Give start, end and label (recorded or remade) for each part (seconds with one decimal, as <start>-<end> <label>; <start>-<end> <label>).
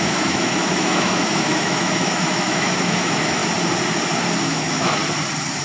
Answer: 0.0-3.4 remade; 3.4-4.4 recorded; 4.4-5.0 remade; 5.0-5.6 recorded